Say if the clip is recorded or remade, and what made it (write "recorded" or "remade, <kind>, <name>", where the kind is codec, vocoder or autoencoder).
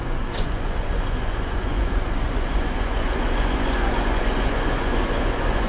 remade, vocoder, Vocos